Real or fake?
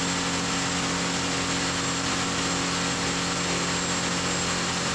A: real